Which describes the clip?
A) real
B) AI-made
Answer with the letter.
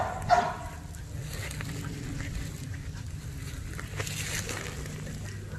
A